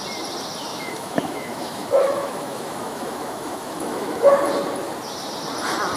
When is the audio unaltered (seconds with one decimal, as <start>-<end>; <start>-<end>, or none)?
0.0-0.7; 4.3-6.0

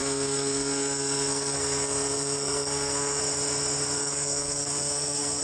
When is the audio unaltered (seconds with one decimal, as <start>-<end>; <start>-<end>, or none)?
3.2-4.0

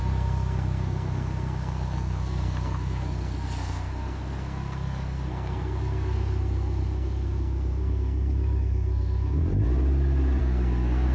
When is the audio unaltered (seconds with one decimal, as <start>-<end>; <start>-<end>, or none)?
9.4-10.4

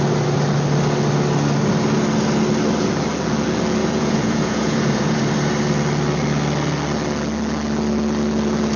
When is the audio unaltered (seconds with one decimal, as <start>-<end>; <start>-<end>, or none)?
0.0-3.8; 5.2-8.8

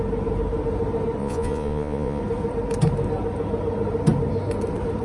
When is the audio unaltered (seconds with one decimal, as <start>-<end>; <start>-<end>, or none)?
0.0-1.2; 2.2-5.0

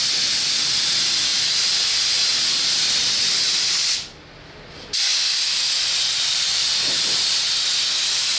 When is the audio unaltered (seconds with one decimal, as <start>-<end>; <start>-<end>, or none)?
0.0-5.1; 7.4-8.4

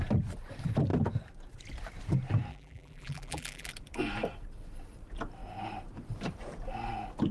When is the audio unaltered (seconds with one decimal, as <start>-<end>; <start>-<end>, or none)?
0.0-2.5; 3.7-7.3

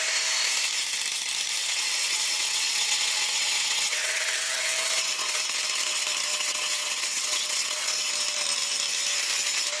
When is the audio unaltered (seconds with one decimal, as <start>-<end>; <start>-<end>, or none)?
0.0-1.6; 5.4-6.3; 8.1-9.8